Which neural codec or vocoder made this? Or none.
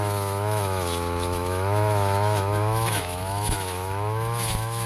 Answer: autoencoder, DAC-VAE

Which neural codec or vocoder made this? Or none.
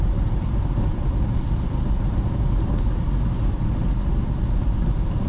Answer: none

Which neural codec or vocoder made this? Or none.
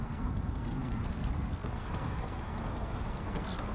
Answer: codec, SNAC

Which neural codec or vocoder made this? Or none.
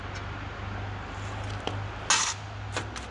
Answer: none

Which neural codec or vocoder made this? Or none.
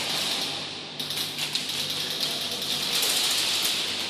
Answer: none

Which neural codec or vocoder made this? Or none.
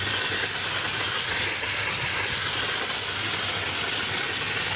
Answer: none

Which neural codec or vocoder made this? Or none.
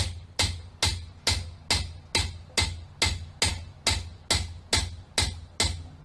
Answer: none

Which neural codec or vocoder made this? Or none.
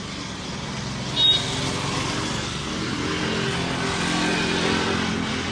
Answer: none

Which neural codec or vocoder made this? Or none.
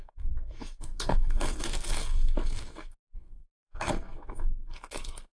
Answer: codec, SNAC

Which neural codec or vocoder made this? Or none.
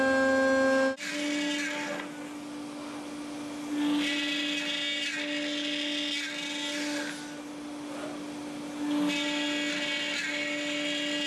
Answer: none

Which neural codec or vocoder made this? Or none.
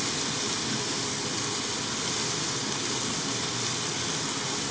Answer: none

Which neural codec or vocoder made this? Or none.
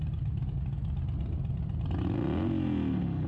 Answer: none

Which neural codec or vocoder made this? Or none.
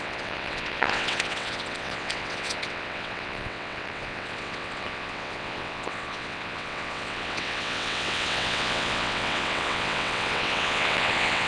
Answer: vocoder, WaveNeXt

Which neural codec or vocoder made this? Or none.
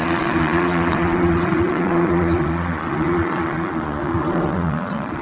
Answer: vocoder, Vocos